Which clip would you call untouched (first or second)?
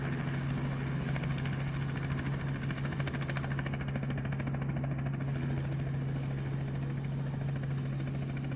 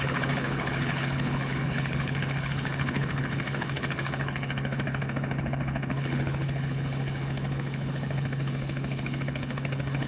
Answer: first